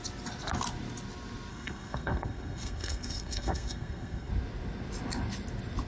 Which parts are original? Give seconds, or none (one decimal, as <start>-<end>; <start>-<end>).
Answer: 0.0-1.5; 4.3-5.9